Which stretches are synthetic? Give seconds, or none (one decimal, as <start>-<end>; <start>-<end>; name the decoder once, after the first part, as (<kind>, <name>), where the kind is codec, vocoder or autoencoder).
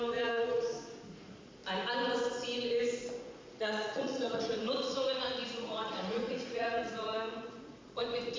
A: 0.0-1.6 (vocoder, Vocos); 3.2-8.4